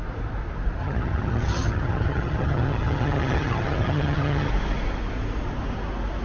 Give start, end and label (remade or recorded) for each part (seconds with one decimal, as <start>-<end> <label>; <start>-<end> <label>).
0.0-0.8 recorded; 0.8-4.5 remade; 4.5-6.2 recorded